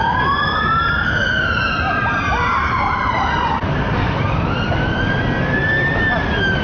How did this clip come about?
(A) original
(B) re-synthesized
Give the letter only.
A